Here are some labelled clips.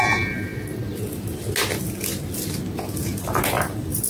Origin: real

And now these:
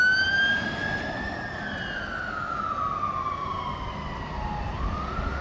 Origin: real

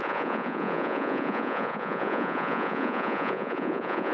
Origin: fake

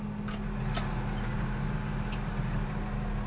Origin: real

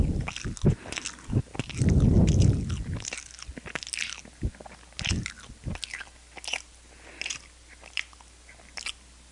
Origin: real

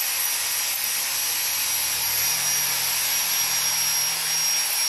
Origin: real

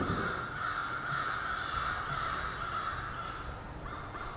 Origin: real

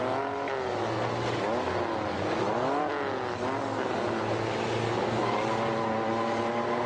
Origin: real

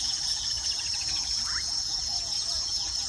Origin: fake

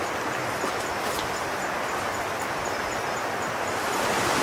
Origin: real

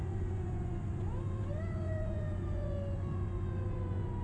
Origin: fake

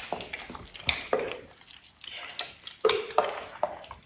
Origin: real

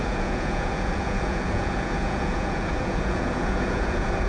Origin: fake